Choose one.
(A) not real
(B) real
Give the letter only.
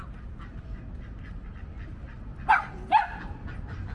B